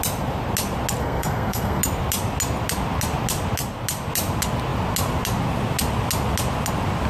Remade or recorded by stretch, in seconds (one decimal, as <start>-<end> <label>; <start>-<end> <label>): 0.0-1.0 recorded; 1.0-1.8 remade; 1.8-7.1 recorded